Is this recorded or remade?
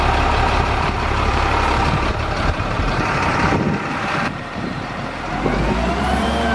remade